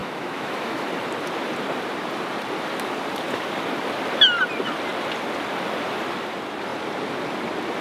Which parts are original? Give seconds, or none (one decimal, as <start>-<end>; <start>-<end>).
0.9-7.8